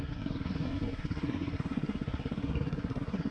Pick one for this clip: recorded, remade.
remade